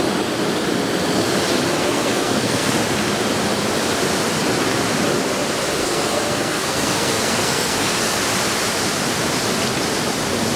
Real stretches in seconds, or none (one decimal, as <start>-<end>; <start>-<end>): 0.0-1.8; 2.7-5.8; 8.2-10.6